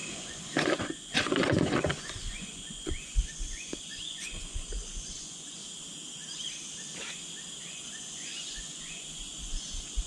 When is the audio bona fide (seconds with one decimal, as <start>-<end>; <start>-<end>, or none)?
5.6-7.7